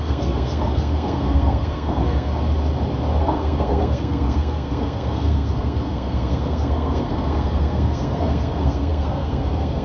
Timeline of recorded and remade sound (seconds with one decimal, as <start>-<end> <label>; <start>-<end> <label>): 0.0-2.3 remade; 2.3-3.2 recorded; 3.2-9.8 remade